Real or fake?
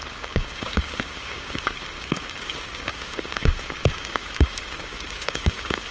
fake